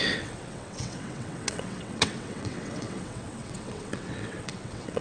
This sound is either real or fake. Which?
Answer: fake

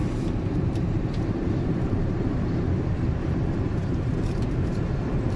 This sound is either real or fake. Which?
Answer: fake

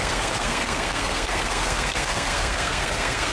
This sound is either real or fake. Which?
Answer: fake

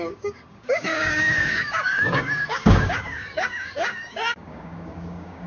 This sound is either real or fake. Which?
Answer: fake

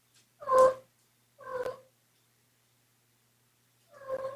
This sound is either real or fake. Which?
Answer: real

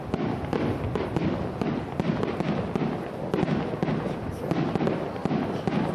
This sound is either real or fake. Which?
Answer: real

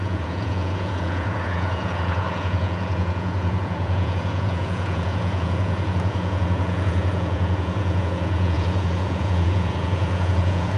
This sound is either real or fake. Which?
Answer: fake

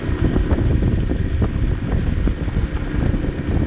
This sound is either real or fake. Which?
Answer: real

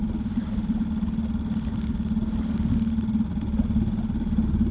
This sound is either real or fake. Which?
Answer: real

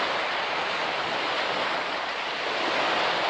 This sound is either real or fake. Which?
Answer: real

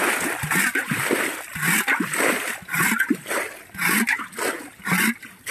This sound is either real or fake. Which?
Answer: real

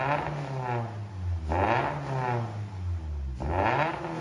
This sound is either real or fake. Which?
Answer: real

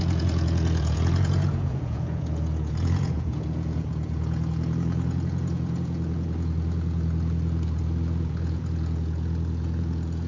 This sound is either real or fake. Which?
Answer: fake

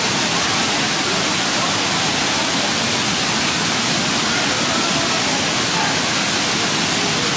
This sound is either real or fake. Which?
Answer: real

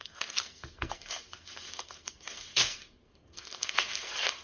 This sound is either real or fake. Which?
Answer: fake